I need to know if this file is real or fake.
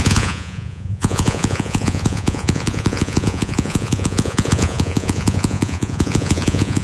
fake